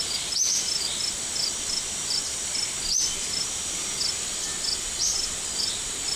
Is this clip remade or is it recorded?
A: recorded